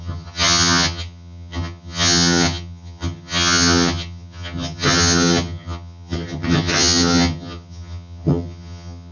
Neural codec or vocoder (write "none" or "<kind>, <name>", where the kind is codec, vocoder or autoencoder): vocoder, HiFi-GAN